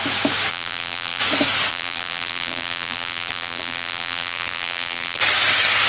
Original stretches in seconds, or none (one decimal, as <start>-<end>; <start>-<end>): 0.0-0.5; 1.2-1.7; 5.2-5.9